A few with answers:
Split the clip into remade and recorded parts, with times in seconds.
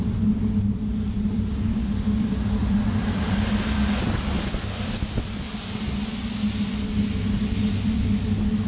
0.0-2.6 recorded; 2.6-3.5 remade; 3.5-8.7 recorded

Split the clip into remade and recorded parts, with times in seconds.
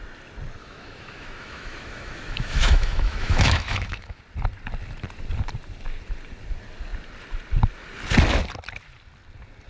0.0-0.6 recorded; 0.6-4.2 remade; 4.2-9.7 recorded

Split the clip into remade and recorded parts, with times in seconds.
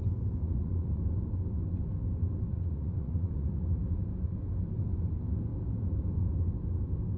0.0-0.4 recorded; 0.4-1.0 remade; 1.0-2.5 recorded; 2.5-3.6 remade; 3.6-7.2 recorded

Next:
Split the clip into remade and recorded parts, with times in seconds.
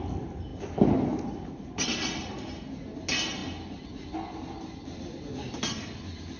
0.0-6.4 recorded